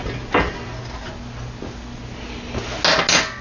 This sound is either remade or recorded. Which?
recorded